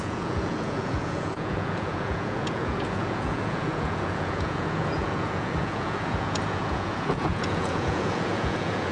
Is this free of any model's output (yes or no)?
no